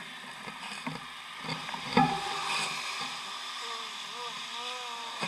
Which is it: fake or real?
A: real